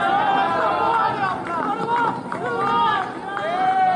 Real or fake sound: real